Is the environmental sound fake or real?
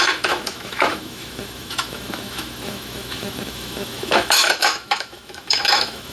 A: fake